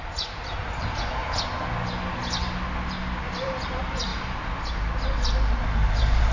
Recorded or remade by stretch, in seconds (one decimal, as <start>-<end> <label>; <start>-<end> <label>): 0.0-1.2 remade; 1.2-3.3 recorded; 3.3-4.1 remade; 4.1-4.7 recorded; 4.7-6.3 remade